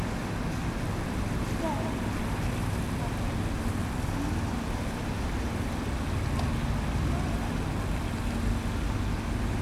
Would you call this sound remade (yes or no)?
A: no